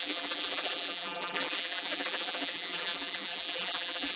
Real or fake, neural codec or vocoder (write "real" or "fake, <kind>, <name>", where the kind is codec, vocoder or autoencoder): fake, vocoder, BigVGAN v2